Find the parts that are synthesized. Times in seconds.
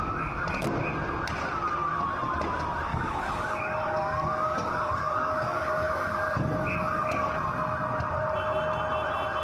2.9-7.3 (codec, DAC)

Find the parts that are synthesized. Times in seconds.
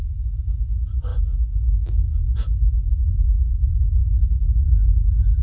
0.0-5.4 (codec, DAC)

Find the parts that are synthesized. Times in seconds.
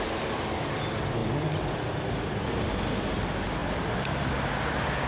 none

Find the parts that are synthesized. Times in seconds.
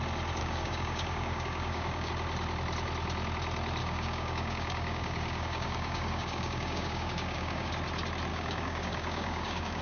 0.4-2.1 (codec, DAC); 3.8-7.7; 8.3-9.8